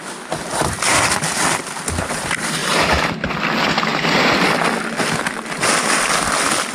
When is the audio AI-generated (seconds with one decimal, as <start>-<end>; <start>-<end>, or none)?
2.6-3.3; 3.9-4.5